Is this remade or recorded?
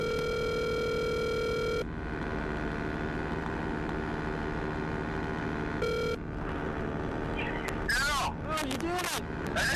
recorded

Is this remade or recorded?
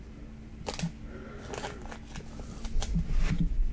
recorded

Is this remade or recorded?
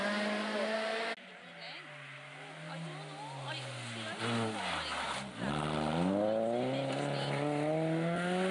recorded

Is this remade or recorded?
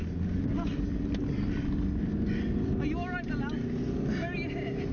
recorded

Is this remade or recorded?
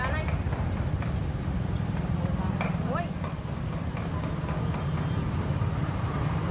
recorded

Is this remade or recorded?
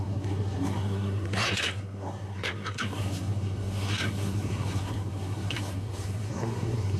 remade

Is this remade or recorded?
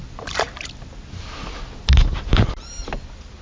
recorded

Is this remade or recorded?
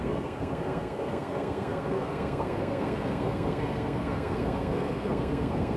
remade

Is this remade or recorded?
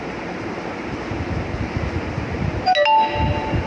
recorded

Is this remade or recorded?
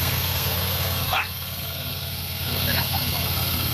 remade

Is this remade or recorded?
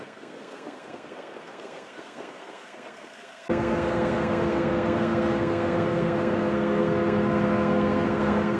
remade